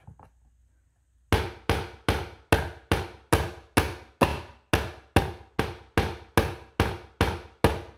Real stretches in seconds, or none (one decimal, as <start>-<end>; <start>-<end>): 0.0-8.0